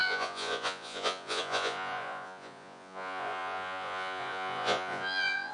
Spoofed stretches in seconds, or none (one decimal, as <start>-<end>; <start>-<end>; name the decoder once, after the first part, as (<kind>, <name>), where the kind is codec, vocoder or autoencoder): 0.0-5.5 (vocoder, Vocos)

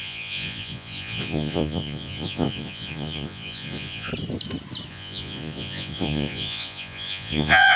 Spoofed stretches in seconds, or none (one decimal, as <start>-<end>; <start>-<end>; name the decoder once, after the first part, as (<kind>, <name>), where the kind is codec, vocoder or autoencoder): 0.0-4.1 (vocoder, Vocos); 4.9-7.8

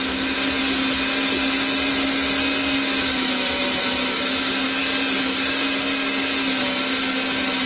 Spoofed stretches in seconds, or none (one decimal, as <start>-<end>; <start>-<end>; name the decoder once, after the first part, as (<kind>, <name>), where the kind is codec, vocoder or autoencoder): none

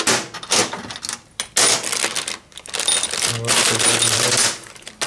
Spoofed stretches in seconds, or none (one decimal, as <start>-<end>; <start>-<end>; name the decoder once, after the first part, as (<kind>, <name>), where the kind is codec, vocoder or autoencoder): none

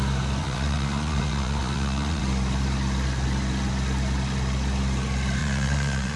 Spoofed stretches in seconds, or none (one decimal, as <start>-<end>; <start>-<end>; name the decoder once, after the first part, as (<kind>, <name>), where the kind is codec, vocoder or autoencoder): 0.4-2.2 (vocoder, Vocos); 5.4-6.2

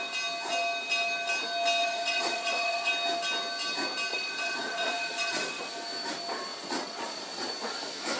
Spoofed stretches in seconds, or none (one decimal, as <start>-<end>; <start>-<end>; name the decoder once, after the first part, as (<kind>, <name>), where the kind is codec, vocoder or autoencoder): 1.8-2.9 (vocoder, Vocos); 4.1-5.6; 6.5-7.5

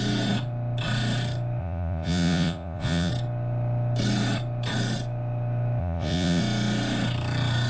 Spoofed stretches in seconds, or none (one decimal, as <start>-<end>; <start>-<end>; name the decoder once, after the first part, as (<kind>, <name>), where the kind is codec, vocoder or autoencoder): 1.6-3.1 (vocoder, Vocos); 5.8-6.4